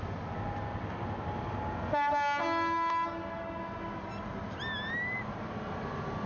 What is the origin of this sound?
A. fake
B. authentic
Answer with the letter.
B